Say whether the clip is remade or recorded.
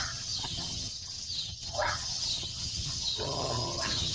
remade